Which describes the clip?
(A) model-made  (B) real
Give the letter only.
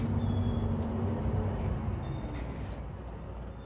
B